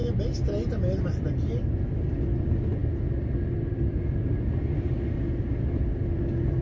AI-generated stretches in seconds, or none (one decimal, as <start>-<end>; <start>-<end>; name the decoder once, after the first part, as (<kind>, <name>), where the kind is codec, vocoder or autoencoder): none